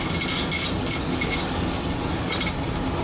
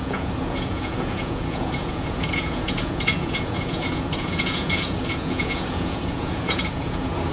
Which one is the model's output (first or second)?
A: second